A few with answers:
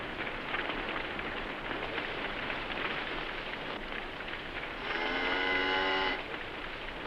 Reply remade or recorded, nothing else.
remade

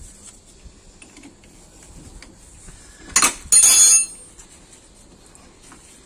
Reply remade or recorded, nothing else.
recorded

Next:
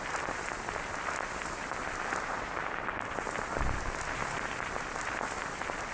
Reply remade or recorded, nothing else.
recorded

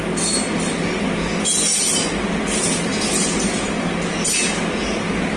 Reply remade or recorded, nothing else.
recorded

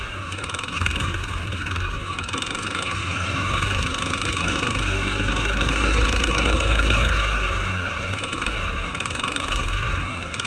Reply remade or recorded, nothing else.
remade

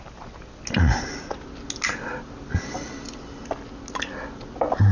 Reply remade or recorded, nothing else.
recorded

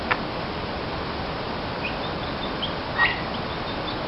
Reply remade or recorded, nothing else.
recorded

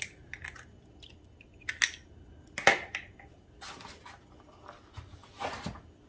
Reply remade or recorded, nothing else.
recorded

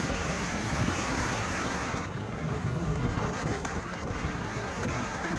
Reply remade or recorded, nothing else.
remade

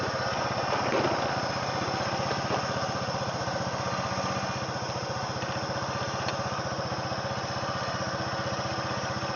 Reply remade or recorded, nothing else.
recorded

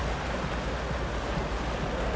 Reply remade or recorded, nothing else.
recorded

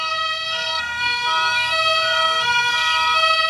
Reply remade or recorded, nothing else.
remade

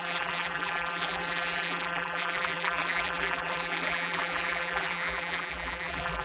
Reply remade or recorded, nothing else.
remade